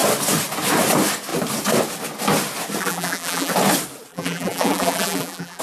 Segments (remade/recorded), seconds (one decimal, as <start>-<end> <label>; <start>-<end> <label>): 0.0-2.8 recorded; 2.8-3.5 remade; 3.5-4.1 recorded; 4.1-5.6 remade